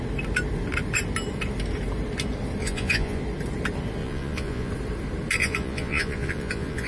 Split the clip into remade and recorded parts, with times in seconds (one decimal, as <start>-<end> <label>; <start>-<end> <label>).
0.0-2.6 recorded; 2.6-3.2 remade; 3.2-4.0 recorded; 4.0-4.7 remade; 4.7-5.4 recorded; 5.4-6.9 remade